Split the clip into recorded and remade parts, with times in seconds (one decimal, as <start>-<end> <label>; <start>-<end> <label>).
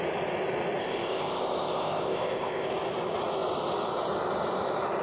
0.0-0.8 recorded; 0.8-2.7 remade; 2.7-5.0 recorded